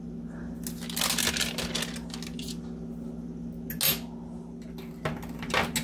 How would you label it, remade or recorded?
recorded